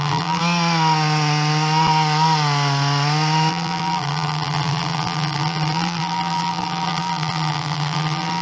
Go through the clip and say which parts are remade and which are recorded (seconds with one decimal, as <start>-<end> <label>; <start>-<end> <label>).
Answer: 0.0-0.4 remade; 0.4-3.5 recorded; 3.5-8.4 remade